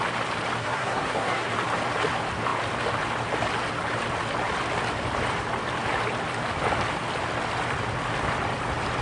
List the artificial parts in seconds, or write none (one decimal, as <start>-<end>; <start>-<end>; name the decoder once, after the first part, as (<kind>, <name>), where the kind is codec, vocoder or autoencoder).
0.6-1.5 (codec, SNAC)